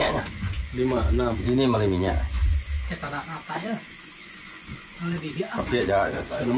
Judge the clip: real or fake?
fake